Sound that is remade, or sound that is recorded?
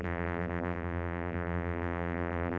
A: remade